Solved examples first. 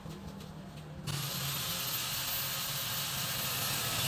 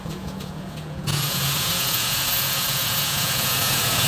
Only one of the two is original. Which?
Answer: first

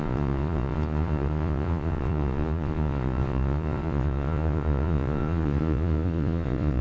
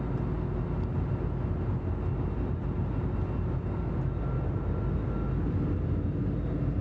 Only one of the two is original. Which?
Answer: second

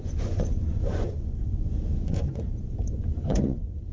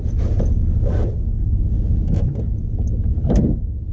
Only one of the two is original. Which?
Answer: second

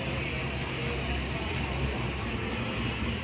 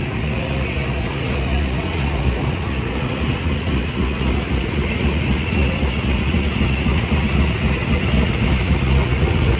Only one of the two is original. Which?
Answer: first